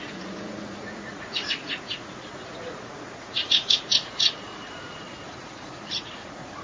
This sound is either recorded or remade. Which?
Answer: remade